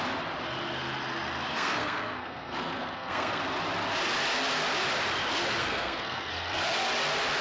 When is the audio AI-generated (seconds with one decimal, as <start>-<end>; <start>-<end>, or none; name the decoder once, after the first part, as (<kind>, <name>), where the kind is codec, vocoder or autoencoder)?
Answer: 1.5-3.4 (codec, SNAC); 5.6-6.3